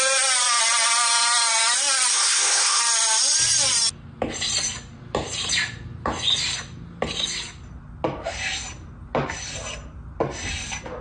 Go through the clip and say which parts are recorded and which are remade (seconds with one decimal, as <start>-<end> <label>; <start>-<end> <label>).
0.0-2.1 recorded; 2.1-2.8 remade; 2.8-11.0 recorded